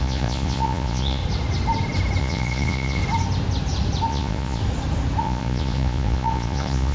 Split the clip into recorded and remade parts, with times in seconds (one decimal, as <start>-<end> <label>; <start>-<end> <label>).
0.0-1.2 remade; 1.2-2.2 recorded; 2.2-3.0 remade; 3.0-4.1 recorded; 4.1-4.6 remade; 4.6-5.2 recorded; 5.2-6.9 remade